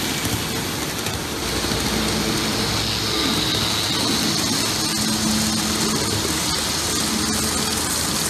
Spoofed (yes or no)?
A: no